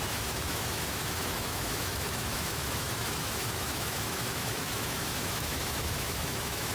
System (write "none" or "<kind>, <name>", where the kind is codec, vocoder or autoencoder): autoencoder, DAC-VAE